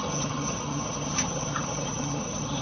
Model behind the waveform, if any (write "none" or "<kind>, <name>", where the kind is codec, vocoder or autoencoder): vocoder, HiFi-GAN